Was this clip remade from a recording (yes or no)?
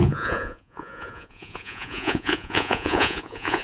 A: yes